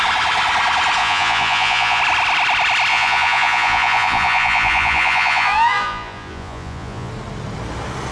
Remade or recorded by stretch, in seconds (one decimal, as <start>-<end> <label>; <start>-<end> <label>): 0.0-1.0 recorded; 1.0-2.0 remade; 2.0-2.9 recorded; 2.9-7.1 remade; 7.1-8.1 recorded